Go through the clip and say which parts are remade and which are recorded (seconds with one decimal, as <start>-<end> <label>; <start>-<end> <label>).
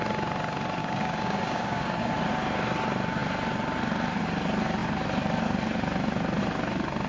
0.0-0.8 recorded; 0.8-2.1 remade; 2.1-7.1 recorded